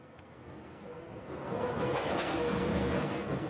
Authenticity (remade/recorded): remade